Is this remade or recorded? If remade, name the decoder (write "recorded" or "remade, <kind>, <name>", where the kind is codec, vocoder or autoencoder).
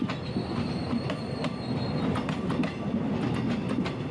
recorded